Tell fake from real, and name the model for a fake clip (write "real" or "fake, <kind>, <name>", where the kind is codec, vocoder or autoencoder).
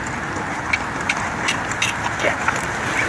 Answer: real